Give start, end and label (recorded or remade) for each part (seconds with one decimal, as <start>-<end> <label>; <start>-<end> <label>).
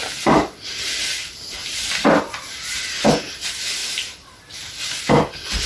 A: 0.0-5.7 recorded